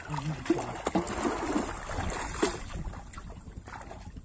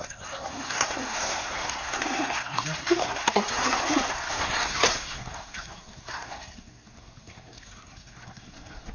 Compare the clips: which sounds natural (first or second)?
first